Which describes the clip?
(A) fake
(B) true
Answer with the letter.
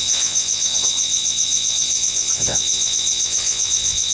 A